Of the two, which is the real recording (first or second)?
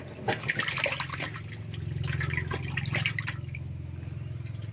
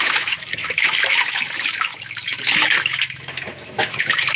first